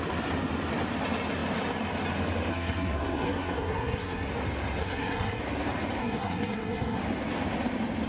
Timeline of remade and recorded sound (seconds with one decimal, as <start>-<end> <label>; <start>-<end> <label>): 0.0-2.5 recorded; 2.5-4.3 remade; 4.3-4.8 recorded; 4.8-5.4 remade; 5.4-6.0 recorded; 6.0-7.0 remade; 7.0-8.1 recorded